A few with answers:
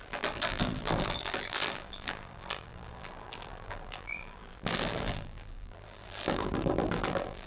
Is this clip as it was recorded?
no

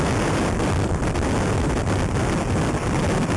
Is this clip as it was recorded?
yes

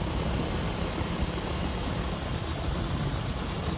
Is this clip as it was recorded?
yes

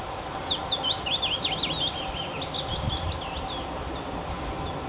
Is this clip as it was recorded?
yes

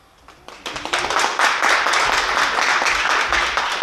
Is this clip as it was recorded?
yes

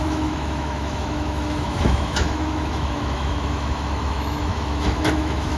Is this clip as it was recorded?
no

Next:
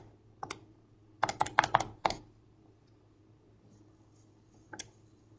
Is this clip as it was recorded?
yes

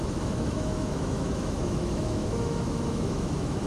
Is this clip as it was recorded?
no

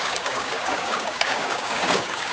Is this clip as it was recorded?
no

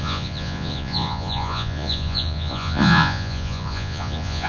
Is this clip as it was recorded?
no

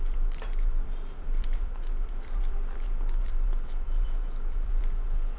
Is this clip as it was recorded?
no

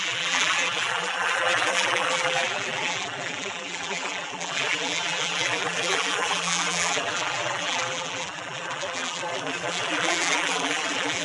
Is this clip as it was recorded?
no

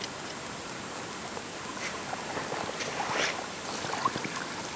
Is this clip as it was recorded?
yes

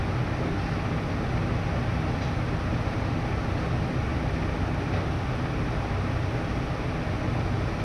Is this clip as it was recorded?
yes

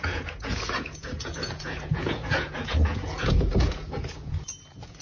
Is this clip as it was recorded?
no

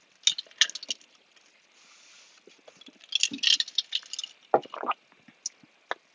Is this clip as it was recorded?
yes